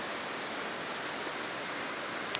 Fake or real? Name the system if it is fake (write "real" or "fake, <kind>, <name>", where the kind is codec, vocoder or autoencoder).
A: fake, vocoder, BigVGAN v2